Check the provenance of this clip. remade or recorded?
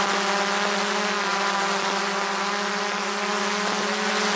recorded